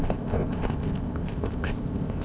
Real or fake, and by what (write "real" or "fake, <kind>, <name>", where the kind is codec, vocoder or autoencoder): fake, codec, ZipCodec